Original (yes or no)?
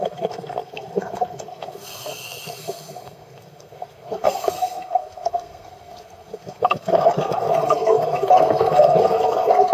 no